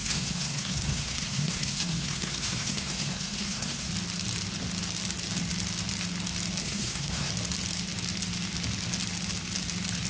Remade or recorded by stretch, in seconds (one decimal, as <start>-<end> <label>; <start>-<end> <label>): 0.0-3.9 remade; 3.9-6.6 recorded; 6.6-7.3 remade; 7.3-10.1 recorded